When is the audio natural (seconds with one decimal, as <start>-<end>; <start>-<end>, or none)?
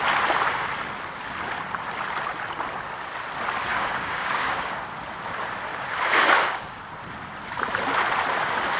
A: 0.0-3.7; 4.8-5.7; 6.8-8.8